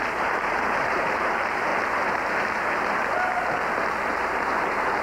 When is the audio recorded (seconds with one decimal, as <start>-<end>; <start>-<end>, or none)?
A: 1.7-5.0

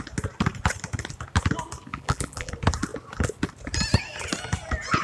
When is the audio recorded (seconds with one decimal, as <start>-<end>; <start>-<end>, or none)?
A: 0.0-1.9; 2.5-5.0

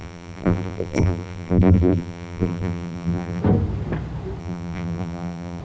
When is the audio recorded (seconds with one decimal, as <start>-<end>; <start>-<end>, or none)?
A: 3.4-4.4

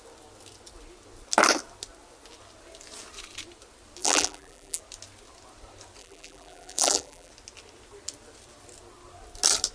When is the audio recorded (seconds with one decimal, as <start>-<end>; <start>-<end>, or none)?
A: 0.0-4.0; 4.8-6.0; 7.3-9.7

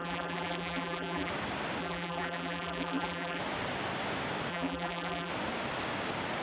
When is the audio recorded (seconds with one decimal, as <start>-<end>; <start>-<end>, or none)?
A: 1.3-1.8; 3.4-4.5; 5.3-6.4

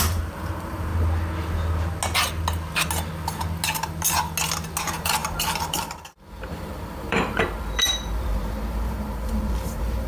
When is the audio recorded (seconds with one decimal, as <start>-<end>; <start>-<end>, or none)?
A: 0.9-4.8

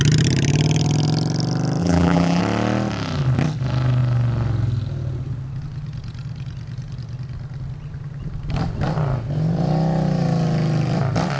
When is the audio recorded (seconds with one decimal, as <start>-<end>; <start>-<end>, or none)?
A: 0.0-1.8; 2.4-11.4